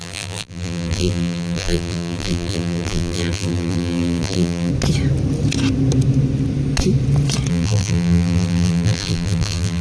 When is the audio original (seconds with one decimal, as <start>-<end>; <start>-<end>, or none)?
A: 4.7-7.5